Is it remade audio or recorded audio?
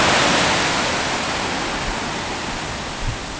recorded